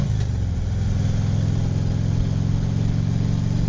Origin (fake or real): real